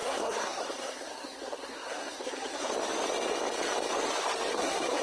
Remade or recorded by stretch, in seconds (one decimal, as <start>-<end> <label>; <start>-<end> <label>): 0.0-2.7 remade; 2.7-4.5 recorded; 4.5-5.0 remade